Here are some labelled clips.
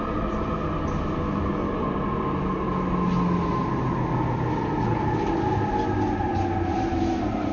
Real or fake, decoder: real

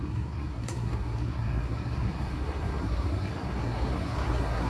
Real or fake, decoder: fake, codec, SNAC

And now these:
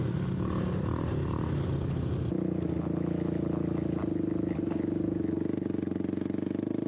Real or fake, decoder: real